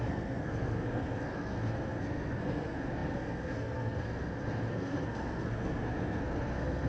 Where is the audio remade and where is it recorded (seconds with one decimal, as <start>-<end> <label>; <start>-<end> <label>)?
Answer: 0.0-6.9 remade